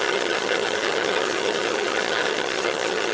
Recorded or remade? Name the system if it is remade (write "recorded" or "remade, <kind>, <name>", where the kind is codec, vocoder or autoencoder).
remade, vocoder, HiFi-GAN